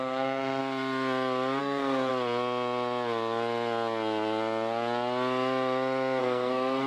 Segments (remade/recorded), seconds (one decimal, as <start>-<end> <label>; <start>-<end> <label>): 0.0-0.6 remade; 0.6-1.6 recorded; 1.6-2.1 remade; 2.1-6.2 recorded; 6.2-6.9 remade